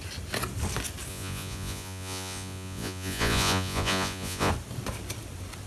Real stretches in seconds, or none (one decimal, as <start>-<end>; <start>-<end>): 0.0-1.1; 4.5-5.7